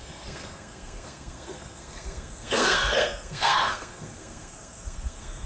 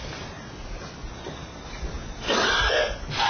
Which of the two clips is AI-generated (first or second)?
first